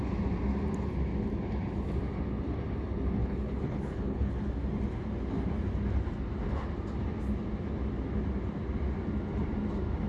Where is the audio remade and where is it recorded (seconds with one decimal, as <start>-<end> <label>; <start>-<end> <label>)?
0.0-3.2 recorded; 3.2-4.3 remade; 4.3-10.1 recorded